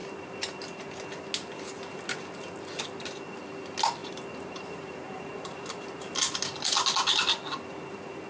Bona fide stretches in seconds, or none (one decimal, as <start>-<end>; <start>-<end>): 0.0-4.0; 6.2-8.3